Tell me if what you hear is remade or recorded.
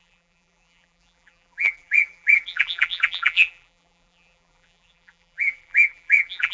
remade